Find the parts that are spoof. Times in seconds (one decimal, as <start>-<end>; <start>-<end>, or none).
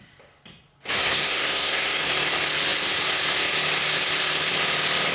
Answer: 1.0-2.1